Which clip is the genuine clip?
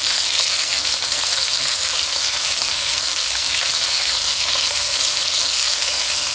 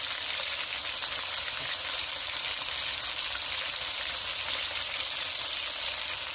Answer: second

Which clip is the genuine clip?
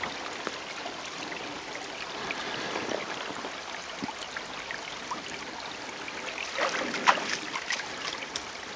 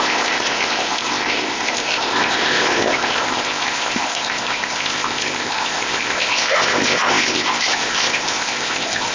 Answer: first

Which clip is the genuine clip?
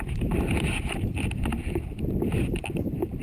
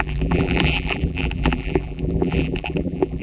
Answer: first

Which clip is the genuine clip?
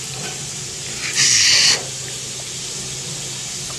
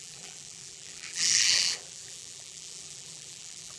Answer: first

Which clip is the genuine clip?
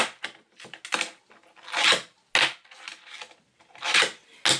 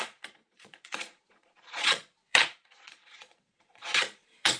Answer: first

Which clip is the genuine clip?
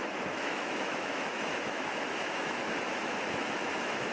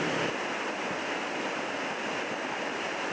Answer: second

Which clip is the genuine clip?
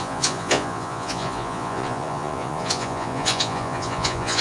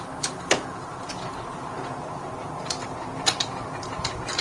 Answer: second